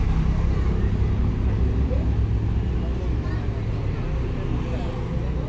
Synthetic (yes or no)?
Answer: no